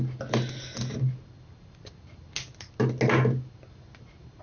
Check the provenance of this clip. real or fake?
real